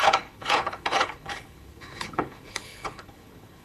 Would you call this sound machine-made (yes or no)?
yes